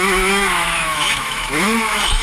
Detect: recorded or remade remade